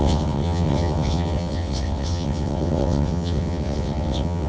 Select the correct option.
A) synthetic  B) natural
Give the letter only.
A